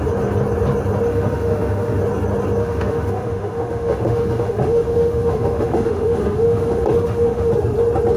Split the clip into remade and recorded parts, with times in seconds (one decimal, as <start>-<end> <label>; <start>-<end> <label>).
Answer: 0.0-1.1 recorded; 1.1-2.0 remade; 2.0-2.6 recorded; 2.6-7.5 remade; 7.5-8.2 recorded